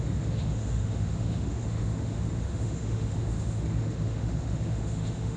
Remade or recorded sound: remade